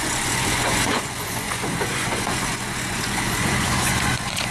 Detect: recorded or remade remade